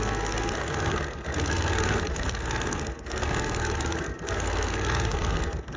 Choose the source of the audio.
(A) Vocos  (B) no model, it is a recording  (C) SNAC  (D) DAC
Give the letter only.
C